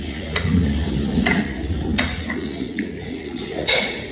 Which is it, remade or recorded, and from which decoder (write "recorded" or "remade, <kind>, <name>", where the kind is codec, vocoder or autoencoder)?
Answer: remade, vocoder, Vocos